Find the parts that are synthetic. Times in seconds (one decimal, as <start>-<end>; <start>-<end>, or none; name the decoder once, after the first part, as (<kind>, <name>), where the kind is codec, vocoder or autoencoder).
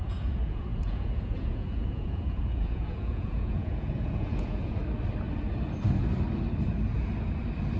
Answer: 0.0-4.8 (vocoder, Vocos)